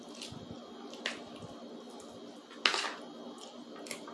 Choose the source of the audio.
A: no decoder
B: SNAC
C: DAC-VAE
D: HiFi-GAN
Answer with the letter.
A